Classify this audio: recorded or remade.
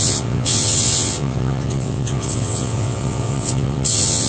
remade